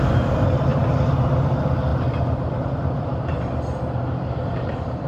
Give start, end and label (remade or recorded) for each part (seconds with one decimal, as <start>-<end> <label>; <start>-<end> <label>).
0.0-0.7 recorded; 0.7-1.3 remade; 1.3-1.9 recorded; 1.9-5.1 remade